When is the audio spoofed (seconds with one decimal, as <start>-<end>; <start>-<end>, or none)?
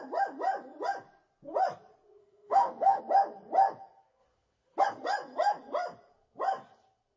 2.2-3.0